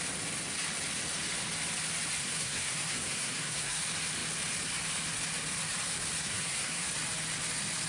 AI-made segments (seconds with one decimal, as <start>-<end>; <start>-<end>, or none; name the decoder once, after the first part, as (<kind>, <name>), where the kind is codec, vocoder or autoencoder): 2.2-3.8 (codec, SNAC); 6.2-6.9